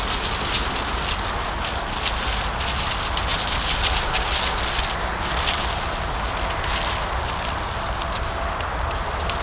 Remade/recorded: recorded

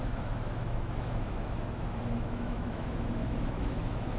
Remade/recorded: remade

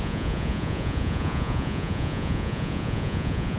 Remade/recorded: remade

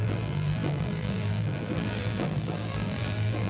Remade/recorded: remade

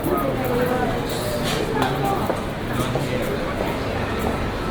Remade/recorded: recorded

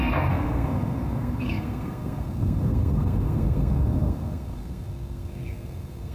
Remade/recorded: remade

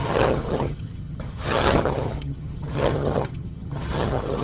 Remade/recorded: remade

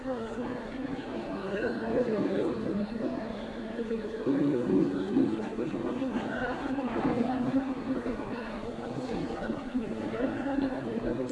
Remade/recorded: remade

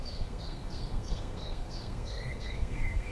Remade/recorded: remade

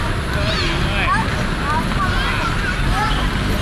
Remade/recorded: recorded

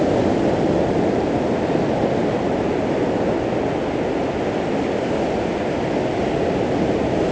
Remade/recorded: recorded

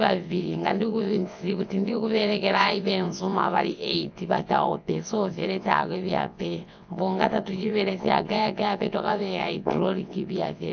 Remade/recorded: remade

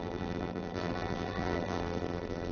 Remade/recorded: remade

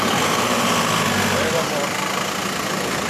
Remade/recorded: recorded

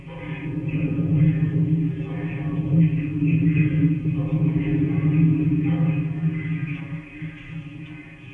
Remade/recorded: recorded